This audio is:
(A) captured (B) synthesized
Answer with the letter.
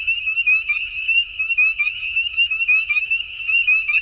B